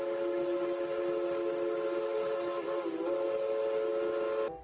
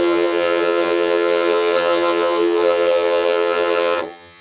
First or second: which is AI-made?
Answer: second